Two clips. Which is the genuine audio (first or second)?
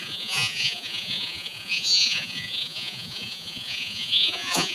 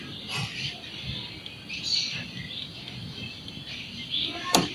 second